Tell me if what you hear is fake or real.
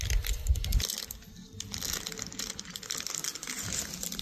real